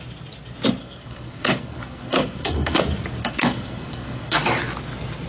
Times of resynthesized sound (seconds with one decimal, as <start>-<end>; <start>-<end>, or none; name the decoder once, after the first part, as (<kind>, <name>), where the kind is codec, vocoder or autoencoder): 0.8-2.8 (codec, SNAC); 3.2-4.4